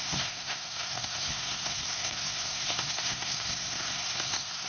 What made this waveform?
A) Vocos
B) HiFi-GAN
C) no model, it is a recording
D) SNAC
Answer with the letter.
D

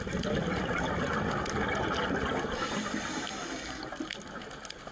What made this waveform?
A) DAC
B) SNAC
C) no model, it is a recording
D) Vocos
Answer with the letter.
C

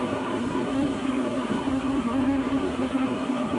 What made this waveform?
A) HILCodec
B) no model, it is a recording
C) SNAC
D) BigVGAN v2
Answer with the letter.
C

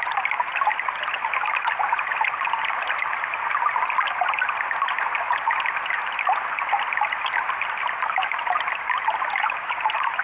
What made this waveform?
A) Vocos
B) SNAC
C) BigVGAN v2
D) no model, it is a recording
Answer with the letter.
D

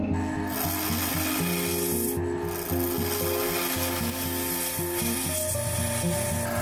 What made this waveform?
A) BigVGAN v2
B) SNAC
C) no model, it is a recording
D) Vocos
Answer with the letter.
C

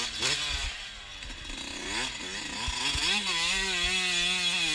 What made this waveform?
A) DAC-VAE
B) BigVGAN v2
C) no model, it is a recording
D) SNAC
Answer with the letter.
C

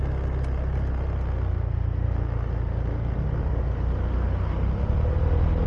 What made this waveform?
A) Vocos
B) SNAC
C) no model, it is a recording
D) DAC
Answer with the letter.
C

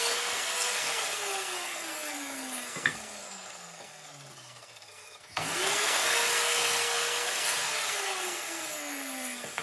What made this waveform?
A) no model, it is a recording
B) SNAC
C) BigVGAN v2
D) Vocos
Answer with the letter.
B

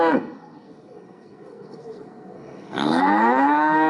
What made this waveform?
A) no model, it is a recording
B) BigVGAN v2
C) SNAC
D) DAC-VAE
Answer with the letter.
C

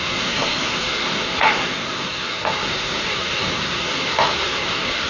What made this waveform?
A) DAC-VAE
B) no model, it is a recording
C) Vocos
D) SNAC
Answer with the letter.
D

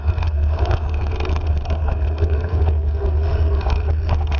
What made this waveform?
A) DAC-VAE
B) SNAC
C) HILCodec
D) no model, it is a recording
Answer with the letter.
B